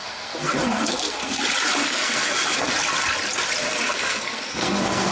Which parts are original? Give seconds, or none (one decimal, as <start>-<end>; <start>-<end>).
1.4-1.8; 2.7-3.6